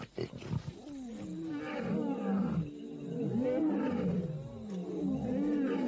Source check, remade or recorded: recorded